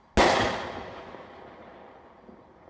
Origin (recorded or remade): recorded